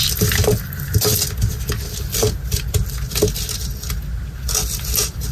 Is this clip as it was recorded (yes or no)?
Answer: yes